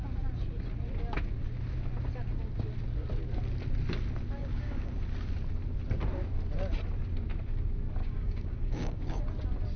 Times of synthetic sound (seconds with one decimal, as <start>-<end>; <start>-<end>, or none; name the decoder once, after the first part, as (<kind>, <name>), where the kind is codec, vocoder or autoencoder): 4.4-4.9 (codec, DAC); 8.0-9.2